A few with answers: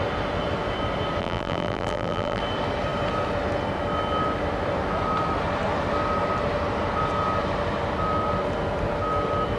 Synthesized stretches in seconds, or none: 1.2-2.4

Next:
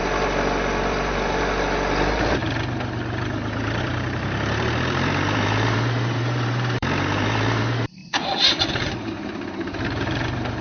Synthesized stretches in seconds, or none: 0.9-2.4; 3.8-10.6

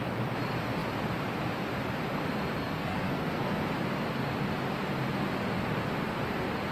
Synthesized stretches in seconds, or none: 2.6-3.6

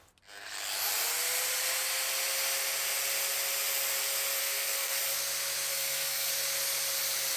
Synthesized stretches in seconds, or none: 4.4-5.0; 5.7-6.3

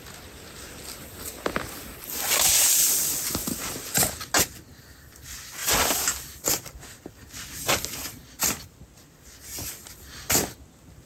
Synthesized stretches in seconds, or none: none